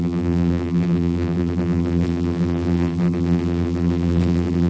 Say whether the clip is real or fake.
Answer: fake